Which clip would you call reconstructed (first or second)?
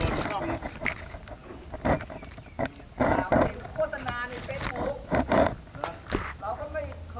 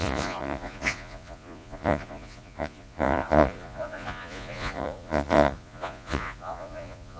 second